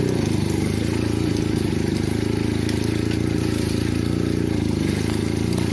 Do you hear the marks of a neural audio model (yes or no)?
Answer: no